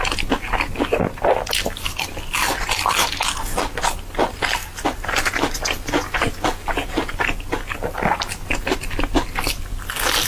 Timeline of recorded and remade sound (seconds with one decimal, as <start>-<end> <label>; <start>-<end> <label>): 0.0-10.3 recorded